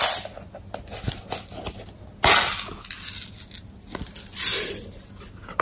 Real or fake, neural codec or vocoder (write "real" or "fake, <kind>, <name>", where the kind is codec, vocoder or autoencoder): real